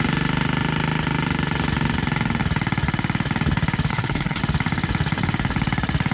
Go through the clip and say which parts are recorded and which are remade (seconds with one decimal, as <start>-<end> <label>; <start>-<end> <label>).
0.0-3.9 recorded; 3.9-4.4 remade; 4.4-6.1 recorded